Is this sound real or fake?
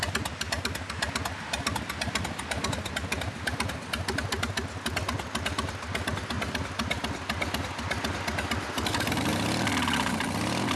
real